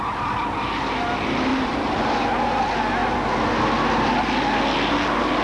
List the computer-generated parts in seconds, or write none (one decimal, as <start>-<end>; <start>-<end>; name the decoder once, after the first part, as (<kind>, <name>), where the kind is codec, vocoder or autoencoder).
1.5-2.1 (vocoder, BigVGAN v2)